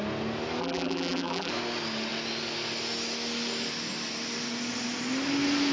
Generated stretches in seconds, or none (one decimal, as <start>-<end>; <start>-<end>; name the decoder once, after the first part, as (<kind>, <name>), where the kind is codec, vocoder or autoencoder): 0.6-1.5 (vocoder, BigVGAN v2)